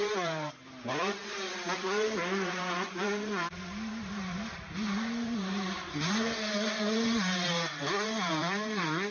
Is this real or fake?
fake